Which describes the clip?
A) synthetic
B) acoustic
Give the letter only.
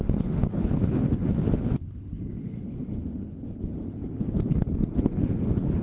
A